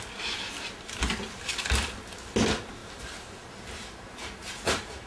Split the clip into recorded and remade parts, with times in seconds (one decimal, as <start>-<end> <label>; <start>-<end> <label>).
0.0-2.8 recorded; 2.8-5.1 remade